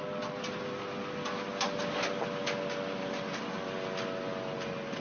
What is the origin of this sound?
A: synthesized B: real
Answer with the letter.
B